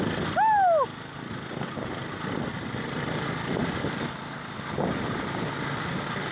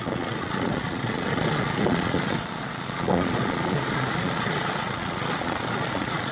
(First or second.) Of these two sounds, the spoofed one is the second